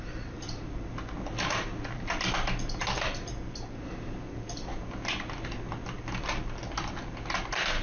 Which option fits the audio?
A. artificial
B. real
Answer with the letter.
B